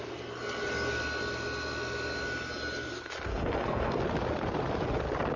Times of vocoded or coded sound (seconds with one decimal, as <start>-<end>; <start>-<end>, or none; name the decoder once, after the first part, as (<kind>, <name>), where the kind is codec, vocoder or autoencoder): 3.3-4.0 (codec, SNAC)